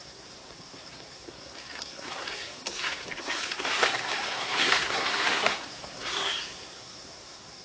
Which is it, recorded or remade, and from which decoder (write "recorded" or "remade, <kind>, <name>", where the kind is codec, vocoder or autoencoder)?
remade, codec, SNAC